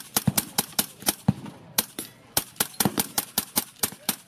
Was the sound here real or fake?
fake